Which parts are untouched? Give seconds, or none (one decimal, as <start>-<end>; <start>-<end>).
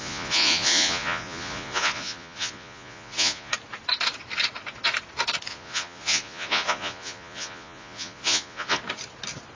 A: 3.5-5.5; 8.8-9.6